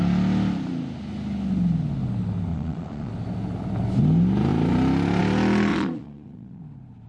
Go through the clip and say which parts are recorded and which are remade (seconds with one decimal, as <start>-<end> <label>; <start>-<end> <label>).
0.0-2.5 recorded; 2.5-3.1 remade; 3.1-5.7 recorded; 5.7-6.6 remade; 6.6-7.1 recorded